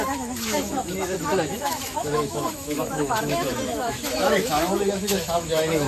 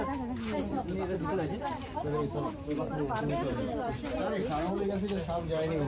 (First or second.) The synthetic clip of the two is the first